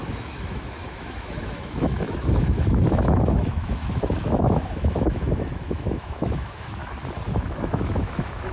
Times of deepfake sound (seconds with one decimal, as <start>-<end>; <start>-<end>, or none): 0.0-6.8; 7.4-8.5